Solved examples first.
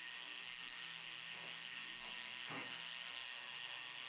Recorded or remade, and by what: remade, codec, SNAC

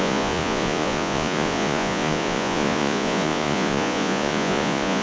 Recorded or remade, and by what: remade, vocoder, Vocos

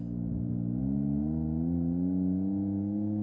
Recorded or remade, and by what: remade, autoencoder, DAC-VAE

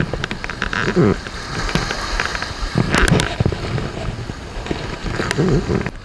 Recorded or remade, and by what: recorded